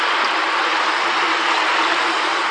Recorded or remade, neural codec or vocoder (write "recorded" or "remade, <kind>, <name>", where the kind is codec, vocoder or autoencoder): recorded